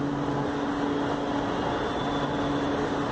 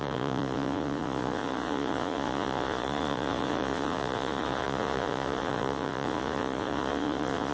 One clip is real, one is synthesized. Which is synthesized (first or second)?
second